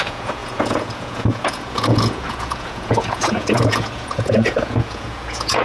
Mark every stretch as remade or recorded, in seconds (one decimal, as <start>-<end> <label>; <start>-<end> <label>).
0.0-5.6 remade